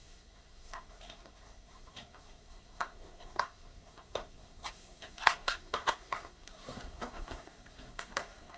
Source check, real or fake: fake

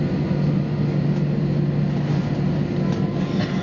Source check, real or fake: real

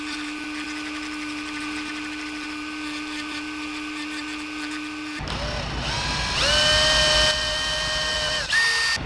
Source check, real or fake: real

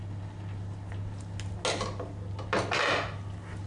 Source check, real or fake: real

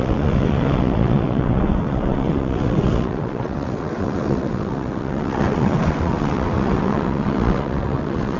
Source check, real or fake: fake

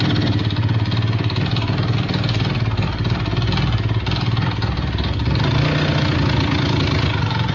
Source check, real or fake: real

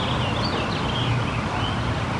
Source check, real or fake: real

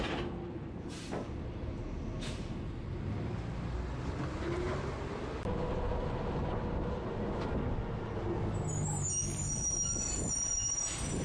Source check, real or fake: real